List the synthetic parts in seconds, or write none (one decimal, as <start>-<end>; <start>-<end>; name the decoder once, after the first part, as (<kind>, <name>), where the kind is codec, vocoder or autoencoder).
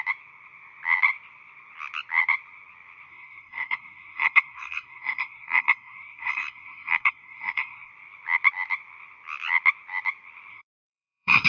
3.1-7.9 (codec, SNAC); 10.5-11.5